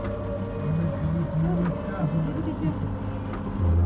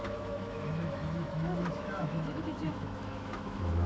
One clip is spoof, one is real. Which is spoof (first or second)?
second